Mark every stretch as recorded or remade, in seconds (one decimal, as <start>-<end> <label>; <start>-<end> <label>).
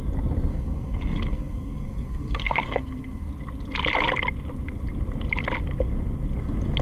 0.0-0.5 recorded; 0.5-3.3 remade; 3.3-6.8 recorded